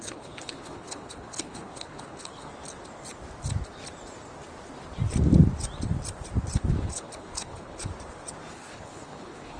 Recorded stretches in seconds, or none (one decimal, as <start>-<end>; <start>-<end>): 2.5-6.7; 7.9-8.5